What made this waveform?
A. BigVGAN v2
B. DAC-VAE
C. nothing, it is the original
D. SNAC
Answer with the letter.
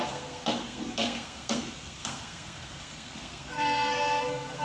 D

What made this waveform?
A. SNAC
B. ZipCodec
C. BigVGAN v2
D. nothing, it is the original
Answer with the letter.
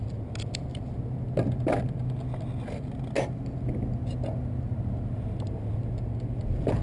D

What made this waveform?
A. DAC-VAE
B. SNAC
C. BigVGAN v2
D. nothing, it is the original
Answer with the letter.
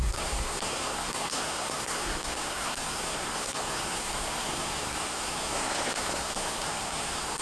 B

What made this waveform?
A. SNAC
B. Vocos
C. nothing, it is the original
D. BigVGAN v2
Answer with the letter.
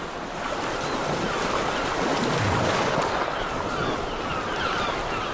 C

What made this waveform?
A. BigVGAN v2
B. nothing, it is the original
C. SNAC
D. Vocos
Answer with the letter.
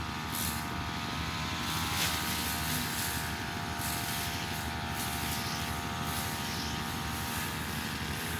B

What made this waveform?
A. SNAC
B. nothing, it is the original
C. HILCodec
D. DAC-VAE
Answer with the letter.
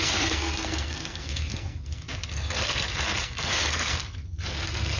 A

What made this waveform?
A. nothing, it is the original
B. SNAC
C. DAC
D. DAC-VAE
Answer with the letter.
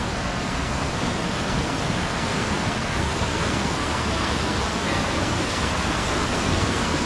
B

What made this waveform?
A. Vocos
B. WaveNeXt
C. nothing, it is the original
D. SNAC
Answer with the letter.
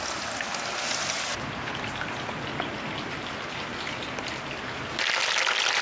C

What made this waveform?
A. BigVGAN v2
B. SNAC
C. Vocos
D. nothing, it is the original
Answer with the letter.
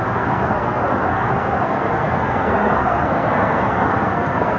B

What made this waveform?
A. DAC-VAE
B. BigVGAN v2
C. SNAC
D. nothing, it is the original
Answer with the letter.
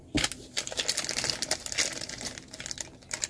D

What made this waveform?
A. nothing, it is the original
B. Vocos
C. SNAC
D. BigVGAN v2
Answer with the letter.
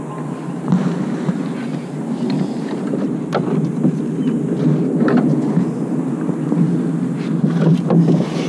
A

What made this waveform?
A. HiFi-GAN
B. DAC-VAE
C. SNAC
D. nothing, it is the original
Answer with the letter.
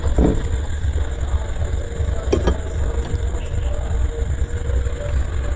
D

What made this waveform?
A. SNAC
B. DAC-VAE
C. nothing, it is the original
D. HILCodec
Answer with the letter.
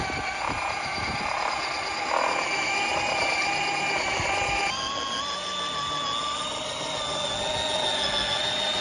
C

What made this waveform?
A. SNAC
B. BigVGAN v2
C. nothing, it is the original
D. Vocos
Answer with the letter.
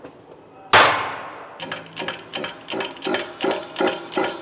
C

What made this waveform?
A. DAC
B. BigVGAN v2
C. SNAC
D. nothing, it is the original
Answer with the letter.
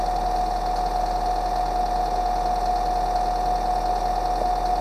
D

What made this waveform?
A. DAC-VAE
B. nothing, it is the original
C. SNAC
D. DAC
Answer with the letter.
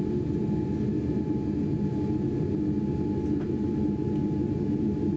B